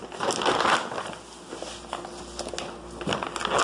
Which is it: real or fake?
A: real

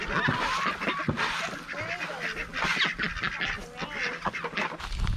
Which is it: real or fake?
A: real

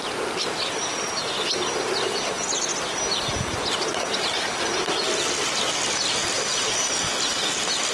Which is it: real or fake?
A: real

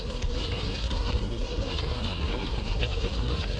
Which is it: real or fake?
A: fake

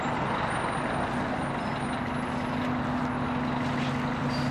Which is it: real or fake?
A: real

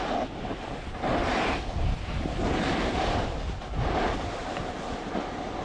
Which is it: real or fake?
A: real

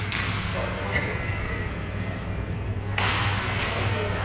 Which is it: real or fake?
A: fake